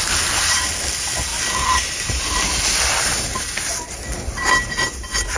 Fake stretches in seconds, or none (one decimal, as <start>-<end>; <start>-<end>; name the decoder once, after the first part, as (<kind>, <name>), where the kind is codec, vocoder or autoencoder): none